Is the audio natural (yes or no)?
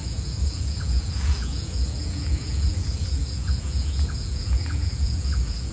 no